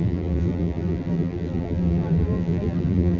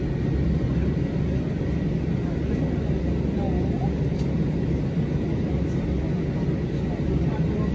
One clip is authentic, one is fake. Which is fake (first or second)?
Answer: first